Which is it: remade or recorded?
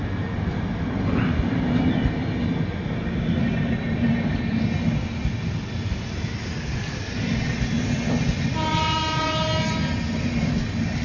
recorded